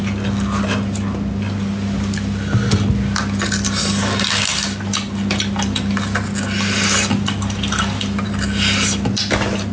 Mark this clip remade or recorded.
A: recorded